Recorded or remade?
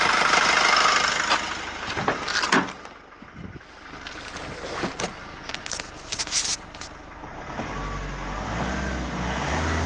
recorded